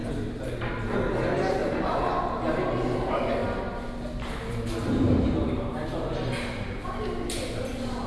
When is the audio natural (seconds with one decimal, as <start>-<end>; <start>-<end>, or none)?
0.0-8.1

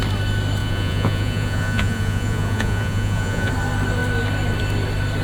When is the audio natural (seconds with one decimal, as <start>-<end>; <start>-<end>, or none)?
0.0-0.6; 3.5-5.2

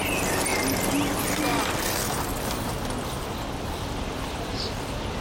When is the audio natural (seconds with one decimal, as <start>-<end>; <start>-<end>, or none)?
0.0-5.2

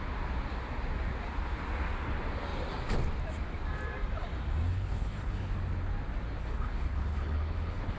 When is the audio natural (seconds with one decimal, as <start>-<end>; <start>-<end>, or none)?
0.0-4.7; 5.5-6.4

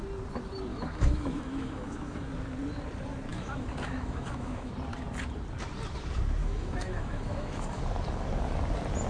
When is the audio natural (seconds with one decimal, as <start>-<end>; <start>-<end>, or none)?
0.0-0.7; 2.3-3.3; 4.7-6.4; 7.8-9.1

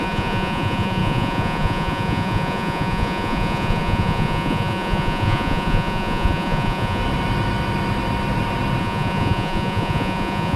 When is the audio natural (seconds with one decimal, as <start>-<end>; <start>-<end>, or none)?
7.0-8.8